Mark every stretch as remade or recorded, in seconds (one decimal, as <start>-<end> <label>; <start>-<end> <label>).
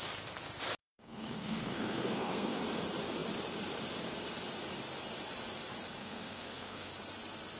0.0-0.8 recorded; 0.8-2.6 remade; 2.6-6.0 recorded; 6.0-6.9 remade; 6.9-7.6 recorded